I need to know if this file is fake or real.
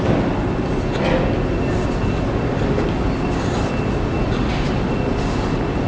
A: real